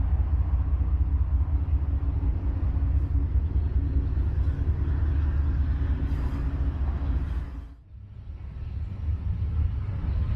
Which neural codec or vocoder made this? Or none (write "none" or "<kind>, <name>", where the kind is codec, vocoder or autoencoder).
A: none